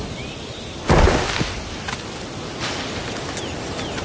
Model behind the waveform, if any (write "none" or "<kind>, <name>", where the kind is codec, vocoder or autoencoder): none